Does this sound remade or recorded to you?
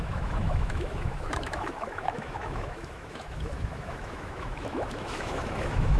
remade